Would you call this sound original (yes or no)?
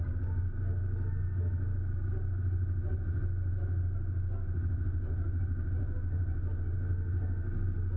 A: yes